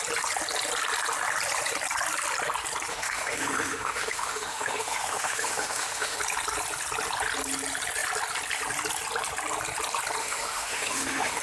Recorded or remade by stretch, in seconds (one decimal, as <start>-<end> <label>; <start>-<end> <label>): 0.0-2.9 recorded; 2.9-6.2 remade; 6.2-10.2 recorded; 10.2-11.4 remade